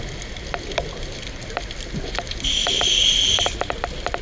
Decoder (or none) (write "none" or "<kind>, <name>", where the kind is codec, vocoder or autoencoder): none